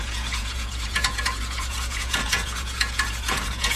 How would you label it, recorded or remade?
remade